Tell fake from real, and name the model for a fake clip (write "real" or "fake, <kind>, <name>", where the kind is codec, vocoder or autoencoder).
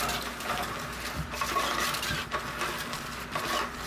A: real